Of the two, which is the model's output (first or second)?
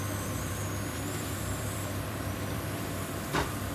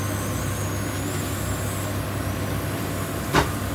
first